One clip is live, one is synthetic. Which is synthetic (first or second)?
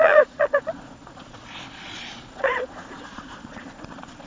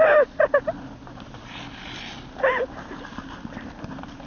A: first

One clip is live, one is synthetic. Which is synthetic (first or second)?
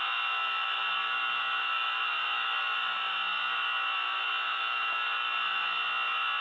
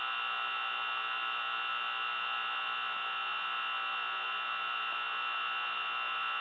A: first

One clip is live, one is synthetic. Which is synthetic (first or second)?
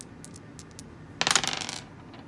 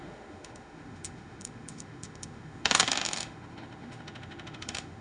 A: second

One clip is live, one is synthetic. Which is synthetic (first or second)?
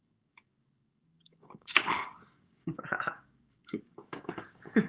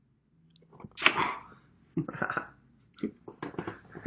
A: first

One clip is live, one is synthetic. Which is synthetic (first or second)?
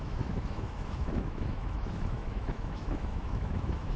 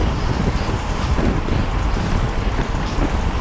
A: first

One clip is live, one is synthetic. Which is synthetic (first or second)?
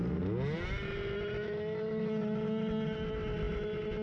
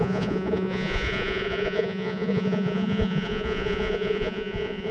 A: second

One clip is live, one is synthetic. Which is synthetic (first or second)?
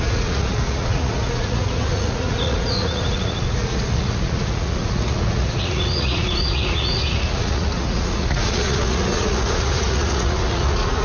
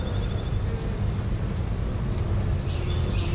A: first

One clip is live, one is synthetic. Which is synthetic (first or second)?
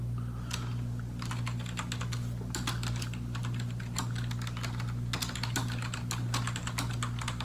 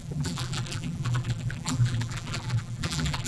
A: second